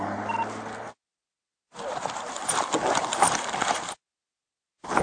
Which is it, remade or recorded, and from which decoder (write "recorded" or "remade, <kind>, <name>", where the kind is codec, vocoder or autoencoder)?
recorded